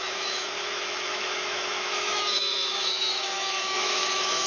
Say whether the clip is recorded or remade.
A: remade